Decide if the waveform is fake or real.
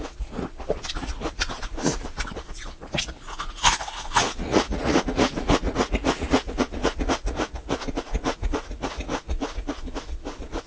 fake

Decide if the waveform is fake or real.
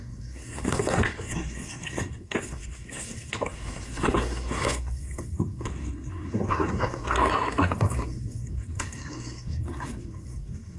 fake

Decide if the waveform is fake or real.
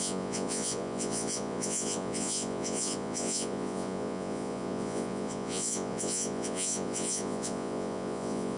fake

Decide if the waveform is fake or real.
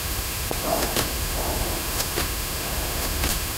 fake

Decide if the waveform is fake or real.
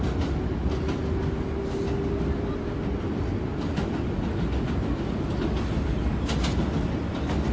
real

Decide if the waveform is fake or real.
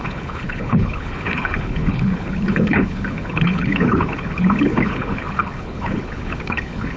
fake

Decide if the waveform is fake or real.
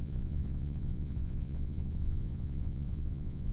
fake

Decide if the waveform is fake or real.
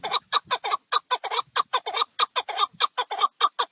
real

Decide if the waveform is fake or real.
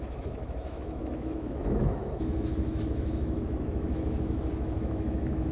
fake